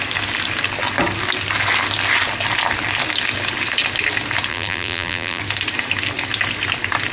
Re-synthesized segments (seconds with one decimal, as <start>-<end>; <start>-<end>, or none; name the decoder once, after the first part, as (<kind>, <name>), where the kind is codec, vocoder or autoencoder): 4.5-5.4 (vocoder, BigVGAN v2)